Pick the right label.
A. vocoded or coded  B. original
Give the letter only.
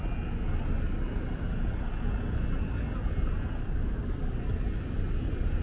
B